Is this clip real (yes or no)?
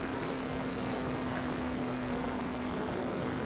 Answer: no